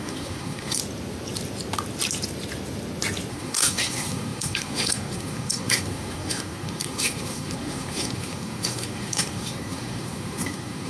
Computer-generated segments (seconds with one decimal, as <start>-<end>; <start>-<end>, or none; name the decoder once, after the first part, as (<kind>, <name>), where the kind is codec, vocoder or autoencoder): 0.0-0.8 (codec, SNAC); 3.3-10.9